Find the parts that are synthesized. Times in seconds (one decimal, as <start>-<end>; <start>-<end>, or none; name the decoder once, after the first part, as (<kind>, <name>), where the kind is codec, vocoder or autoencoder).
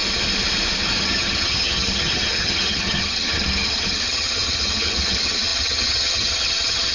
1.0-6.9 (vocoder, HiFi-GAN)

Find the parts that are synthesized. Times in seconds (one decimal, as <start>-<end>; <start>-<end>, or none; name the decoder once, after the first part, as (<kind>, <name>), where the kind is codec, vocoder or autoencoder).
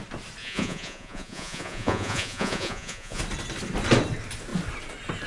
0.4-3.2 (vocoder, Vocos)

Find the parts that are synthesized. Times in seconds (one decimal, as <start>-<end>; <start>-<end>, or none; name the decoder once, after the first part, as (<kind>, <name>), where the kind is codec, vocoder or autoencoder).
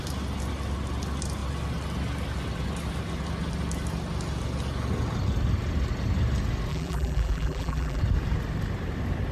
6.7-8.0 (vocoder, BigVGAN v2)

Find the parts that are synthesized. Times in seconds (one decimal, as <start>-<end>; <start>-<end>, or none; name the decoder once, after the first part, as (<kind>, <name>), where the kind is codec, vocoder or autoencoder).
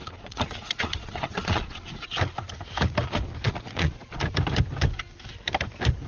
0.0-2.2 (vocoder, Vocos); 3.4-4.2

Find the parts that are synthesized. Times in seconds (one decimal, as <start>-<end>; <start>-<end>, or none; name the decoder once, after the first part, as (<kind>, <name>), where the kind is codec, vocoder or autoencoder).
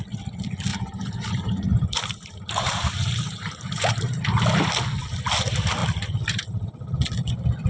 0.7-4.2 (vocoder, BigVGAN v2)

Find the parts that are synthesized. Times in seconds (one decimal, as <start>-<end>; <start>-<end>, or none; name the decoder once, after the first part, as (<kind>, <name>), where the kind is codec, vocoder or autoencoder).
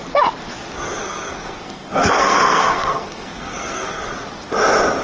1.0-4.0 (codec, SNAC)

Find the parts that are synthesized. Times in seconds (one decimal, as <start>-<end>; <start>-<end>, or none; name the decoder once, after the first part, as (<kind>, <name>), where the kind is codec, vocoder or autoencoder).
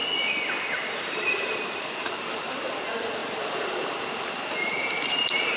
3.2-3.7 (vocoder, BigVGAN v2)